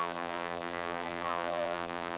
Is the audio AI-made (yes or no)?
yes